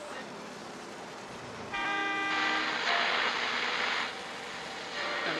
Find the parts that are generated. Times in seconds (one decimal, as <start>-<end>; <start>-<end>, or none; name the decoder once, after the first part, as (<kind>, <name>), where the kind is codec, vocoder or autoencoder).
0.6-1.5 (vocoder, BigVGAN v2)